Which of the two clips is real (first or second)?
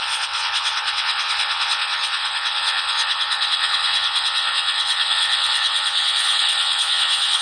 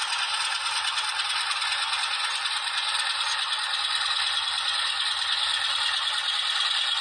second